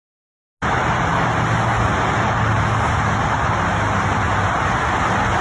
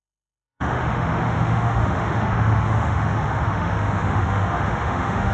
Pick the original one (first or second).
first